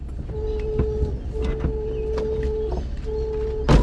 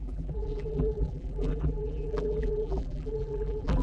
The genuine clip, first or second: first